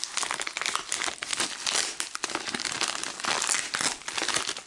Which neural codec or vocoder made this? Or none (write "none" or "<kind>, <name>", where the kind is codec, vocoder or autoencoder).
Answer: none